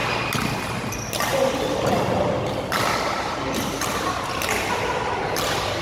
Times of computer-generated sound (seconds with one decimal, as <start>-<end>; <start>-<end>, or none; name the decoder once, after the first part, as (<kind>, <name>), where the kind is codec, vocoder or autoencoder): none